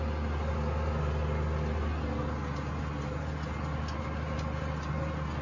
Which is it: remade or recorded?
recorded